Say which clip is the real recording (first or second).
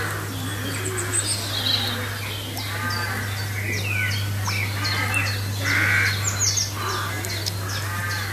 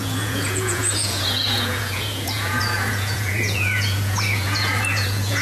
first